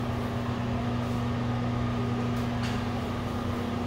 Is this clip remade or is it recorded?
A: recorded